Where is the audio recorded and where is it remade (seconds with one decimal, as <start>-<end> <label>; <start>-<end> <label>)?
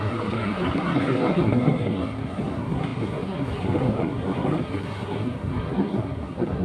0.0-6.6 remade